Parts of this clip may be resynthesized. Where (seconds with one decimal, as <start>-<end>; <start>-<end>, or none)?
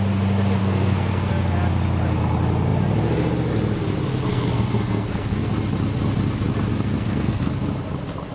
0.6-1.3; 4.3-5.5; 6.7-7.5